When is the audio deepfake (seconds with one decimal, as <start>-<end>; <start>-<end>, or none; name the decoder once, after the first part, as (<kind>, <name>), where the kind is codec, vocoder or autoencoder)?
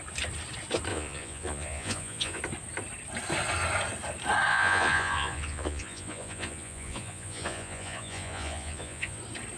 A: 0.9-2.4 (vocoder, Vocos); 4.5-9.2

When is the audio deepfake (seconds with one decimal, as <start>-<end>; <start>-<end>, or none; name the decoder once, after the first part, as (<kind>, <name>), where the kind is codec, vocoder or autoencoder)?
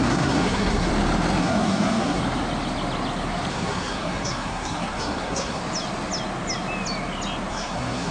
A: 0.0-0.9 (codec, SNAC); 1.4-2.2; 3.5-5.6; 7.5-8.1